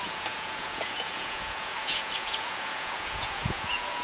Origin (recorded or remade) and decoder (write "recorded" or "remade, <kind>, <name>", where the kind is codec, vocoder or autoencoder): remade, vocoder, Vocos